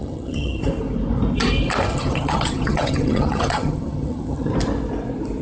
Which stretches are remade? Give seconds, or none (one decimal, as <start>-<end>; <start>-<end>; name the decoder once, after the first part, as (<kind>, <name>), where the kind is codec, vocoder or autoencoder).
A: 0.0-0.6 (vocoder, HiFi-GAN); 1.9-4.5